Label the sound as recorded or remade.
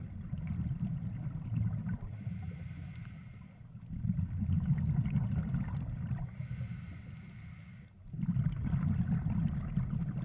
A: recorded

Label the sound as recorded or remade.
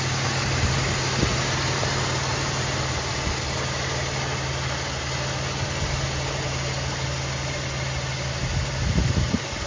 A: recorded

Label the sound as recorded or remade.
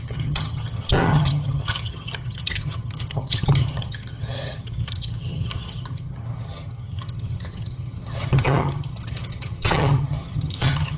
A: remade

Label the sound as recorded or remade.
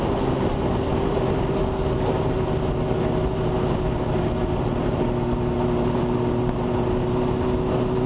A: recorded